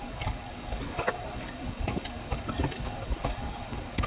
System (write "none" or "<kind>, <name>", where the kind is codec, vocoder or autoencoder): codec, DAC